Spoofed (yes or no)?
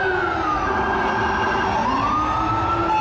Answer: no